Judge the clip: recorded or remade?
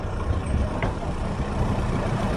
remade